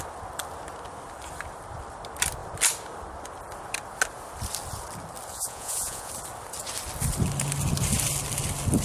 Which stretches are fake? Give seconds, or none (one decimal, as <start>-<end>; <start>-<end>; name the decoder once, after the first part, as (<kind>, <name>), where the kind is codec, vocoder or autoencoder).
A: 5.3-6.1 (vocoder, Vocos)